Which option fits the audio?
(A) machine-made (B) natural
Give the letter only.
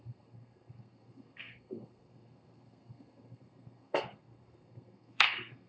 A